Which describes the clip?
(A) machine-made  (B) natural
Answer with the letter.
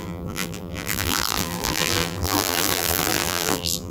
A